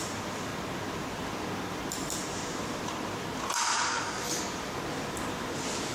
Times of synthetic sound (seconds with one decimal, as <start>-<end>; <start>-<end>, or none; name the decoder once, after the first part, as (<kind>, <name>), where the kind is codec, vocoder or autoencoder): none